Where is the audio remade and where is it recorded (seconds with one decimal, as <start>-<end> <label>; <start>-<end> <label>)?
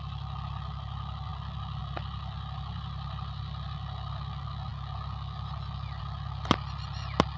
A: 0.0-7.4 recorded